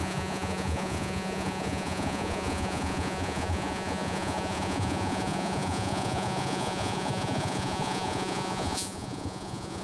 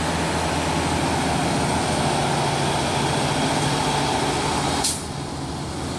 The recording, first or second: second